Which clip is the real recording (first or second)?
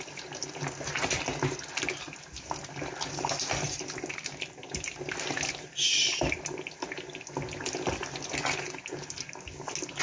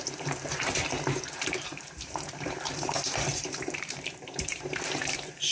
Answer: first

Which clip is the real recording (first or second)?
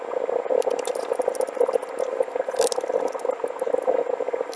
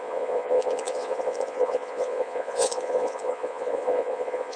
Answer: first